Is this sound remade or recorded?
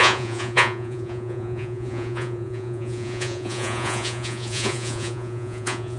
remade